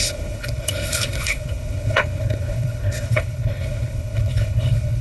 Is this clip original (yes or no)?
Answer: no